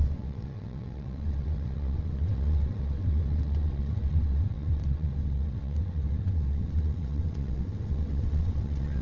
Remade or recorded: remade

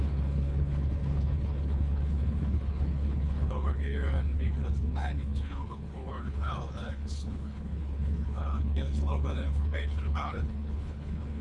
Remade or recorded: remade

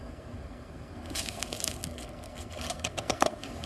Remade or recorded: remade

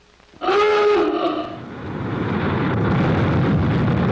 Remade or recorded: recorded